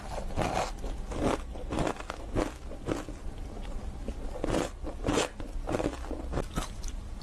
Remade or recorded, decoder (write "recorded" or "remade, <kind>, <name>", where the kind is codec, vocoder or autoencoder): recorded